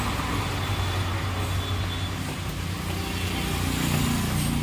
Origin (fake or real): real